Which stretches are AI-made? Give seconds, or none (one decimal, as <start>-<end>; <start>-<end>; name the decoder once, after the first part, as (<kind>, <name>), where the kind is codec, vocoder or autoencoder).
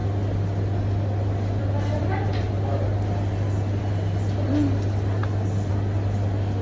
none